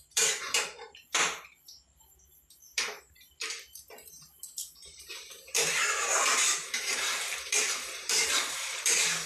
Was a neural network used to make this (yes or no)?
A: yes